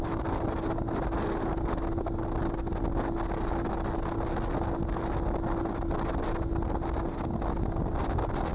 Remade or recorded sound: recorded